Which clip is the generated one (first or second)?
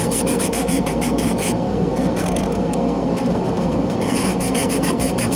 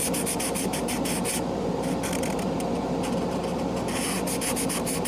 first